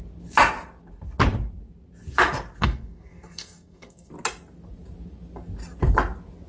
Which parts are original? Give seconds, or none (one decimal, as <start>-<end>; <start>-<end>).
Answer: 0.0-2.6; 4.1-6.5